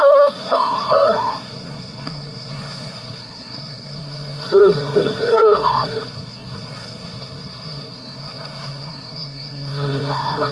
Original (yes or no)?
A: no